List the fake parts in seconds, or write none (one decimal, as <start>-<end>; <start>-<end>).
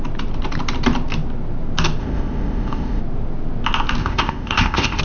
2.0-3.0; 4.0-5.0